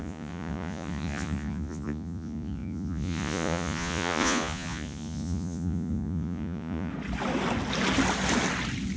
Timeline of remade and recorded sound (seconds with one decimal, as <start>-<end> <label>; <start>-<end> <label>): 0.0-6.9 remade; 6.9-9.0 recorded